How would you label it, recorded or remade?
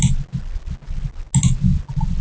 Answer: recorded